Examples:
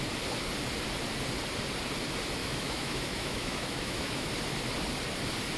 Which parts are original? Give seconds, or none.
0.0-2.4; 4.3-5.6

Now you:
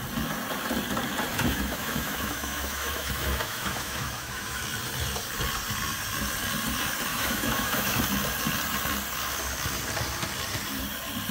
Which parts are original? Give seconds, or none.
0.0-1.3; 4.6-7.1; 8.0-11.3

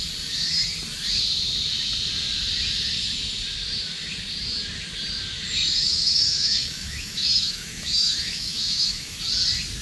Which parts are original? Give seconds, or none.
0.0-5.6; 9.2-9.8

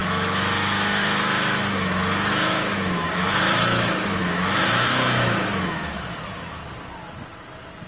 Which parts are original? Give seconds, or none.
6.6-7.9